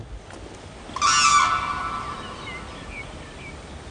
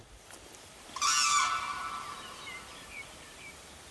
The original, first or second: first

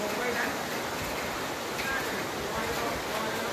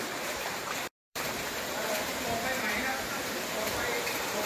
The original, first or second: first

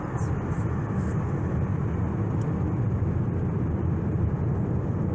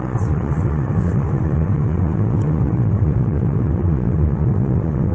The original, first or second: first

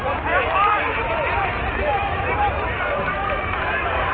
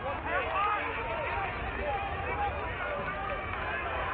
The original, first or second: second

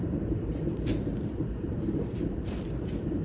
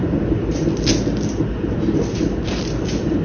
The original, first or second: second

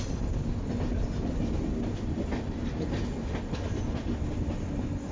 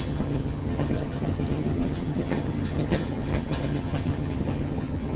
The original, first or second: first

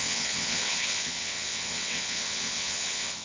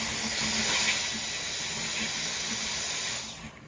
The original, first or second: second